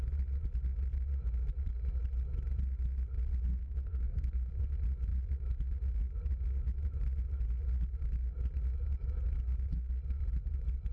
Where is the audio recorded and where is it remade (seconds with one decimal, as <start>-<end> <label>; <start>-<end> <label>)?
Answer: 0.0-3.6 recorded; 3.6-4.5 remade; 4.5-10.9 recorded